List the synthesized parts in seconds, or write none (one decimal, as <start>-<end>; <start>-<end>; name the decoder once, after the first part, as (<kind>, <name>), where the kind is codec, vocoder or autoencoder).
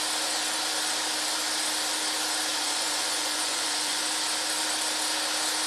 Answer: 2.5-4.0 (vocoder, Vocos)